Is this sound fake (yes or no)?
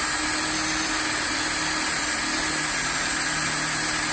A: no